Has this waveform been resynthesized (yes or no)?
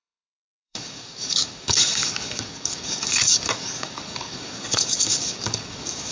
yes